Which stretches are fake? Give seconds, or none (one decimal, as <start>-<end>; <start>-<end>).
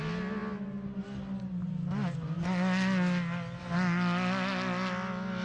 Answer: none